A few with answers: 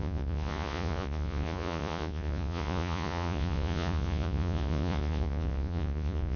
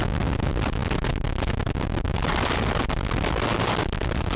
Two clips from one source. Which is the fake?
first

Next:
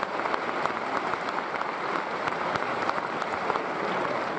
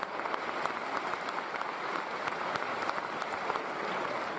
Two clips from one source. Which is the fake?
second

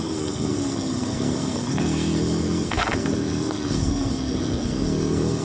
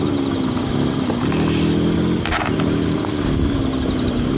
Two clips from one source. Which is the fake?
first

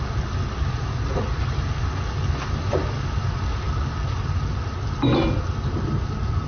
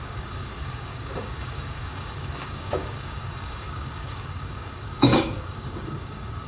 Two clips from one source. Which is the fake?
second